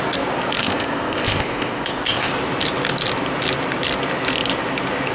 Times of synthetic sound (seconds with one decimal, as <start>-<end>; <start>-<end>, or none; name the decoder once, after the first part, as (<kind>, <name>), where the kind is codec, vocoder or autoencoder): 0.6-2.3 (codec, ZipCodec)